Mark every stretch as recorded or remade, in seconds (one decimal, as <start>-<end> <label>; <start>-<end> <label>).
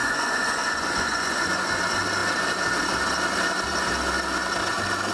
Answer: 0.0-1.8 remade; 1.8-5.1 recorded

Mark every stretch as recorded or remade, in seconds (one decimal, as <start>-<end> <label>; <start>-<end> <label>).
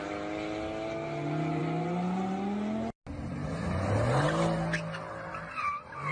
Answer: 0.0-6.1 recorded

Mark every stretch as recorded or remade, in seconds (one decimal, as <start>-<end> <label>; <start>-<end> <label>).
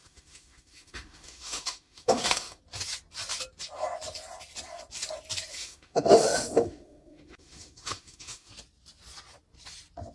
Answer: 0.0-2.6 remade; 2.6-5.5 recorded; 5.5-8.5 remade; 8.5-10.1 recorded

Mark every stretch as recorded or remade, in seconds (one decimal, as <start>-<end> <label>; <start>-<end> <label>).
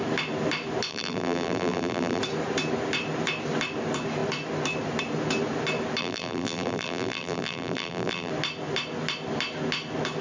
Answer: 0.0-0.9 recorded; 0.9-2.2 remade; 2.2-6.0 recorded; 6.0-8.3 remade; 8.3-10.2 recorded